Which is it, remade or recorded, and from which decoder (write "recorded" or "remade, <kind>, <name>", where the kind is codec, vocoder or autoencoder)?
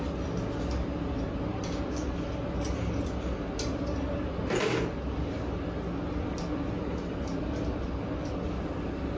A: recorded